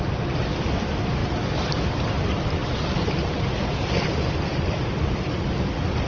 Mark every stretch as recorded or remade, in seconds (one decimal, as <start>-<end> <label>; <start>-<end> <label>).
0.0-1.2 recorded; 1.2-2.1 remade; 2.1-2.6 recorded; 2.6-3.9 remade; 3.9-6.1 recorded